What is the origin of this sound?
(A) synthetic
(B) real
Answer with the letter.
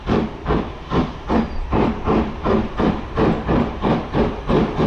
A